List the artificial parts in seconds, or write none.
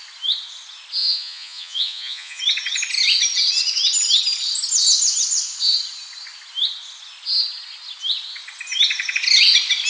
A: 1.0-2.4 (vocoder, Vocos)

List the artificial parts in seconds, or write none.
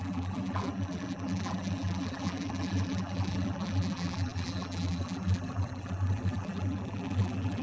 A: 0.0-7.6 (vocoder, BigVGAN v2)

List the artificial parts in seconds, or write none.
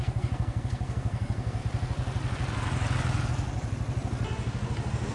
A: 0.0-1.6 (codec, SNAC)